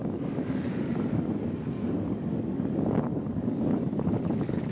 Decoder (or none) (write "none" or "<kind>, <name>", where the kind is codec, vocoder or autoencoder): codec, DAC